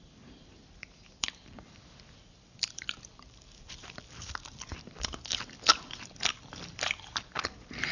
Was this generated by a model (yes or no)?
yes